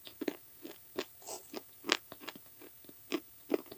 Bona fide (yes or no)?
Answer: yes